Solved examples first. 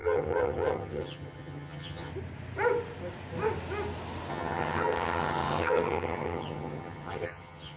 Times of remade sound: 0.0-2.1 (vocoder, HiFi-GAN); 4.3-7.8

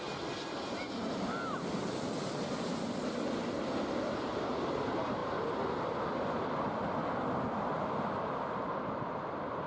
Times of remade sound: none

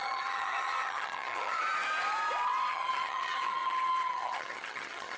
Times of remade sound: 0.0-1.6 (vocoder, HiFi-GAN); 2.7-5.2

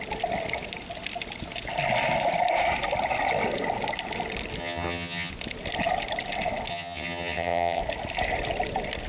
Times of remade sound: 4.6-5.3 (vocoder, HiFi-GAN); 6.7-7.8

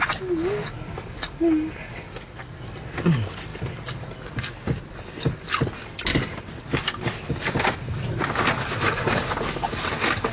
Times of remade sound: none